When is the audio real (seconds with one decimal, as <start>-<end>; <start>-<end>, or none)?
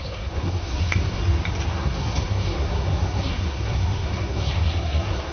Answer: 1.2-1.7